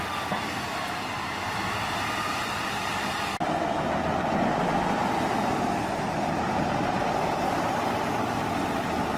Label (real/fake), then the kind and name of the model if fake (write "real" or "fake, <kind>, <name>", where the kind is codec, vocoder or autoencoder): real